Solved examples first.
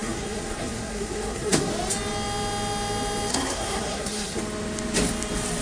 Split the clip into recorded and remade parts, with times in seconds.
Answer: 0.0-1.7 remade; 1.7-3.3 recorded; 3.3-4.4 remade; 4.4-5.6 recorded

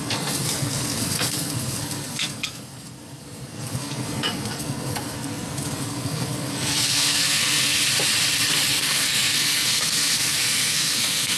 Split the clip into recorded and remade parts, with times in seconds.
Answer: 0.0-7.8 remade; 7.8-8.7 recorded; 8.7-11.4 remade

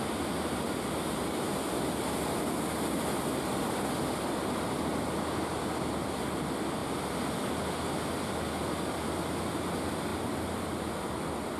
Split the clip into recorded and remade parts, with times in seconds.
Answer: 0.0-11.6 recorded

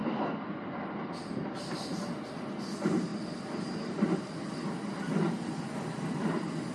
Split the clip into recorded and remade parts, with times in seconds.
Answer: 0.0-6.7 recorded

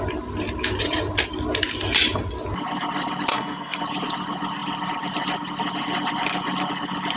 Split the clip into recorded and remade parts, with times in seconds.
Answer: 0.0-3.3 recorded; 3.3-3.8 remade; 3.8-7.2 recorded